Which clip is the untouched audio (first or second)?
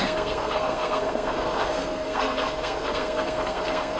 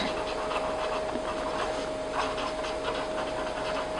second